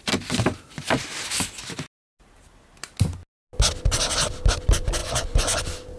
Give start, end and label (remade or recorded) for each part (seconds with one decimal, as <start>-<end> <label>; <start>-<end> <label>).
0.0-5.0 recorded; 5.0-5.6 remade; 5.6-6.0 recorded